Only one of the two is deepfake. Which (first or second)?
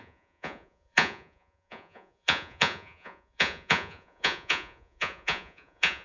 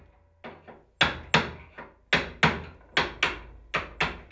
first